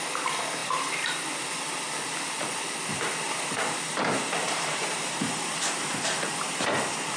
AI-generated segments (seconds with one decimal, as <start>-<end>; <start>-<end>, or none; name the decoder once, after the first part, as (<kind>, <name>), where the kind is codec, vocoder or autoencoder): 0.6-1.5 (vocoder, BigVGAN v2); 2.9-7.2